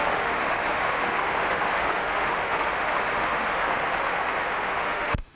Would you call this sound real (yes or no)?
no